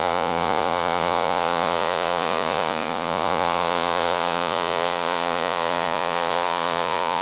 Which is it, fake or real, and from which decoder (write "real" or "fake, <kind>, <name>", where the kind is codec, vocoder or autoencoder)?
fake, vocoder, Vocos